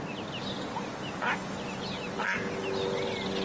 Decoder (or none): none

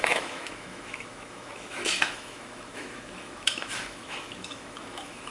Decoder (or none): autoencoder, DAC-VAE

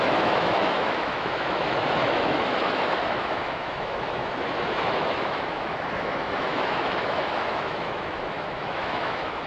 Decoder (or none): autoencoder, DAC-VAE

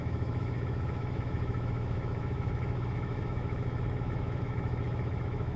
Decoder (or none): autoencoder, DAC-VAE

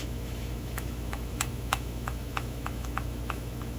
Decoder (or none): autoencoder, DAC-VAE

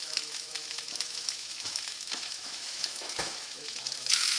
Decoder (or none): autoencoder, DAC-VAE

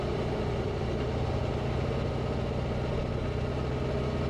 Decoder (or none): none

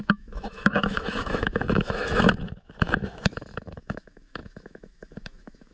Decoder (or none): autoencoder, DAC-VAE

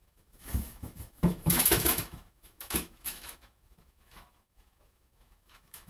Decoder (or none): autoencoder, DAC-VAE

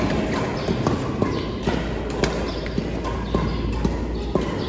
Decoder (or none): none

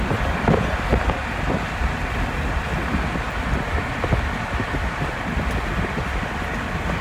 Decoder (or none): none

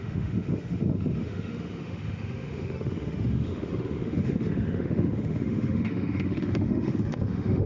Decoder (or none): autoencoder, DAC-VAE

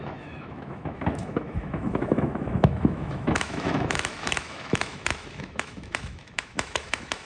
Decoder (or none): autoencoder, DAC-VAE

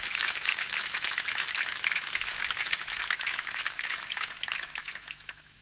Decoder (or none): autoencoder, DAC-VAE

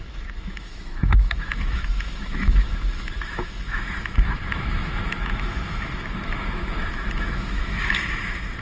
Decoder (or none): autoencoder, DAC-VAE